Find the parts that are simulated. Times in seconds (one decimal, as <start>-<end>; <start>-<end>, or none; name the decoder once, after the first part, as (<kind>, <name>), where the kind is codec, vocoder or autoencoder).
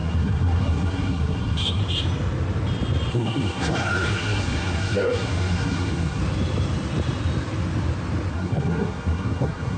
0.0-1.8 (codec, SNAC); 3.1-6.2; 8.3-9.8